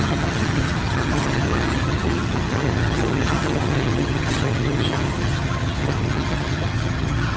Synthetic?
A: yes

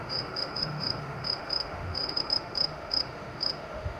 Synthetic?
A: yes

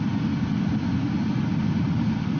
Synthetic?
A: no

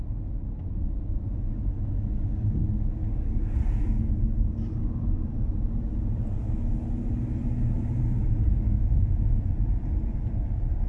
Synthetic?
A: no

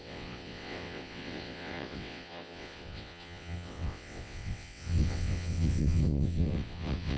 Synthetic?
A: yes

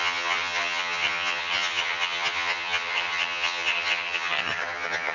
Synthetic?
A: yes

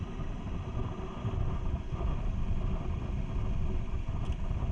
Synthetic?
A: yes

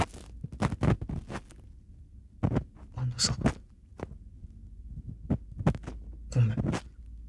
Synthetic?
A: no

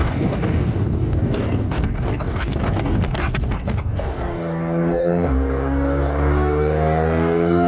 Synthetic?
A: yes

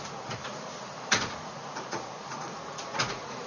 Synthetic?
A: yes